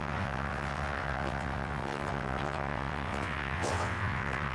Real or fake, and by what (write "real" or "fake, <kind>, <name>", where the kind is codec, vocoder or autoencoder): fake, vocoder, WaveNeXt